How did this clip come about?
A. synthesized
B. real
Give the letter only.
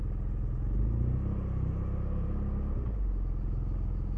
B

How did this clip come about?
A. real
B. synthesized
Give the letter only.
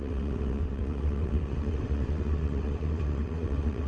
B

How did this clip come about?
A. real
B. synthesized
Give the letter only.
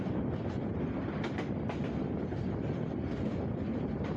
A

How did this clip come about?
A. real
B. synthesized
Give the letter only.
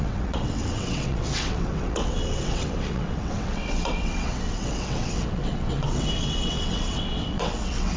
B